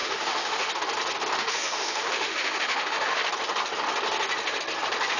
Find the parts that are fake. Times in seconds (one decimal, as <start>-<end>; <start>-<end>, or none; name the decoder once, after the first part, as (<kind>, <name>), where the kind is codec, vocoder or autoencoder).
0.0-0.7 (autoencoder, DAC-VAE); 1.4-3.2